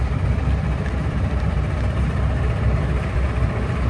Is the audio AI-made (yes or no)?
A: yes